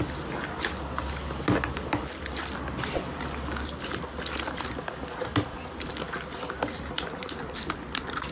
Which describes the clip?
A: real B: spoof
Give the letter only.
A